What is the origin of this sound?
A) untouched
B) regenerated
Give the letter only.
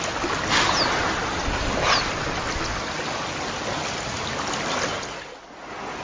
A